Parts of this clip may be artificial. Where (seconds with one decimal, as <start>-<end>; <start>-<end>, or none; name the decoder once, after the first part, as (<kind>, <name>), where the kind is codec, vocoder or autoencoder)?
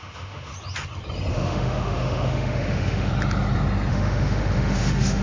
0.0-0.5 (autoencoder, DAC-VAE); 1.3-3.1; 3.9-5.2